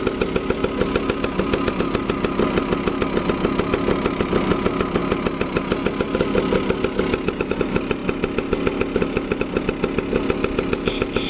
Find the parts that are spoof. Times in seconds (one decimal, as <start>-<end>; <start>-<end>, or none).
none